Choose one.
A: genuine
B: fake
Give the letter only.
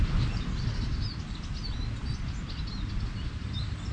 A